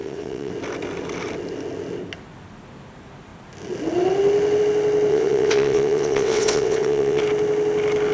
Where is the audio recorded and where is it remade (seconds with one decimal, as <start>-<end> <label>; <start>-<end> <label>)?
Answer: 0.0-0.5 remade; 0.5-5.1 recorded; 5.1-7.2 remade; 7.2-8.1 recorded